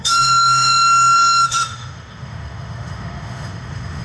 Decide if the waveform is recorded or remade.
remade